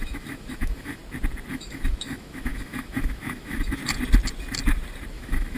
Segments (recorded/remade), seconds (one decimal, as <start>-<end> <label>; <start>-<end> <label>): 0.0-1.0 remade; 1.0-1.5 recorded; 1.5-3.8 remade; 3.8-5.1 recorded; 5.1-5.6 remade